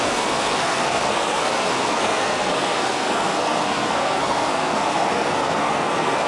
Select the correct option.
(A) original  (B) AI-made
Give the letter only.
B